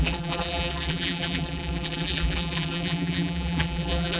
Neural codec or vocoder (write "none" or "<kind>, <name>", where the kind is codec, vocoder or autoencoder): vocoder, BigVGAN v2